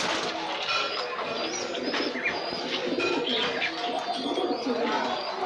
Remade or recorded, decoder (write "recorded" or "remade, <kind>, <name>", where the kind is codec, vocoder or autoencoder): recorded